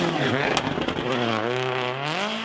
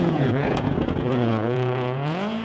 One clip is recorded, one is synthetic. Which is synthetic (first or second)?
second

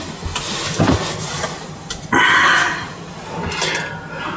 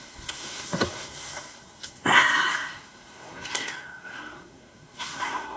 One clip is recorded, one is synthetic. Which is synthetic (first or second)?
second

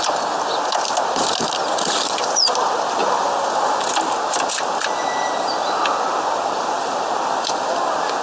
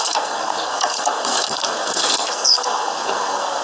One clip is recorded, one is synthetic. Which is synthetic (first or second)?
second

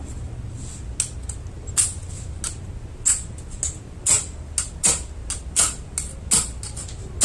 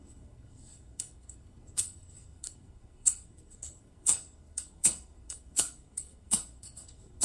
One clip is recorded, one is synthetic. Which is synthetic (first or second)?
second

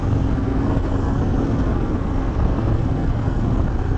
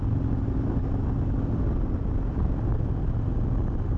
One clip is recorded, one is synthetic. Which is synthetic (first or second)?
first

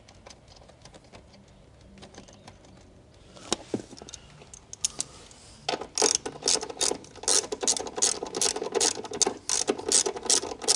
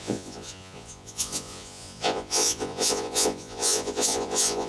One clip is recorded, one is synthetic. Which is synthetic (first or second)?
second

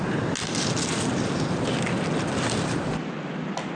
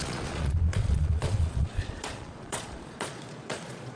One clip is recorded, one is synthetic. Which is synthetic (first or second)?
second